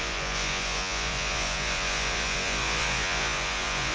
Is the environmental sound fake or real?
fake